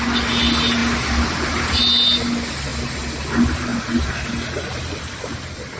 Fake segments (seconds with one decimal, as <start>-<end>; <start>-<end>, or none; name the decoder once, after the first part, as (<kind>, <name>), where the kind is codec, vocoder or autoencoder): none